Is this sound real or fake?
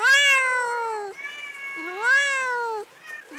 real